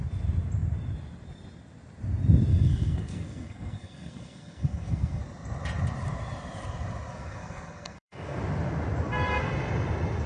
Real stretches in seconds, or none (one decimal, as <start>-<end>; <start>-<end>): 0.0-2.5; 5.2-7.1; 8.4-10.3